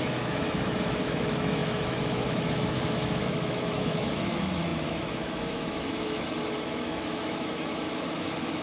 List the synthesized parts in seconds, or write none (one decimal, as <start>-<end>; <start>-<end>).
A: 0.0-8.6